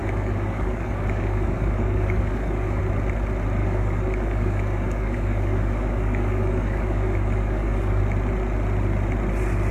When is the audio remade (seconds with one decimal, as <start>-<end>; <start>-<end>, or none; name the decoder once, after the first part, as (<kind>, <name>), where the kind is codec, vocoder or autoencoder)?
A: 0.0-2.8 (codec, DAC); 3.6-8.0